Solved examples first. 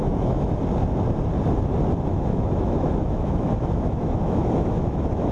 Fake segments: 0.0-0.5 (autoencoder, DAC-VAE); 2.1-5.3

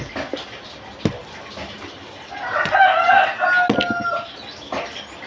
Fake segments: none

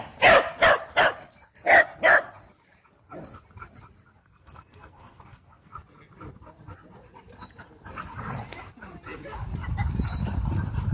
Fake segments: 4.2-5.7 (codec, SNAC)

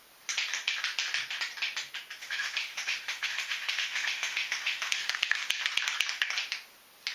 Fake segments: 2.2-5.4 (autoencoder, DAC-VAE)

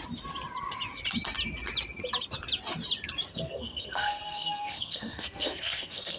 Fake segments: 3.3-6.2 (codec, SNAC)